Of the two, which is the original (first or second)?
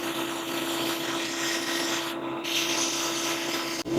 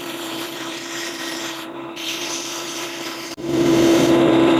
first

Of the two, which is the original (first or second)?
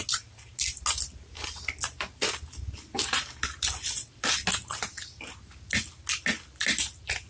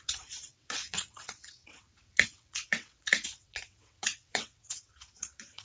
first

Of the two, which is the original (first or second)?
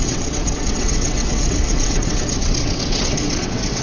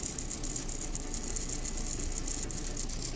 second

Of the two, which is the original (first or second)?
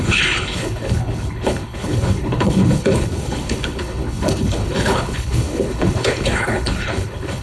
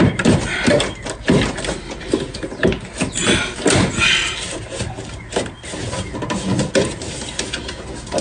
second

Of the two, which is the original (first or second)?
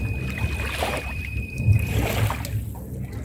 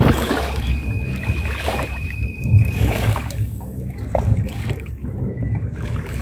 first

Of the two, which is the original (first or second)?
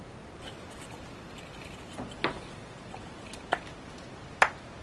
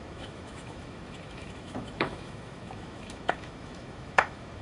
first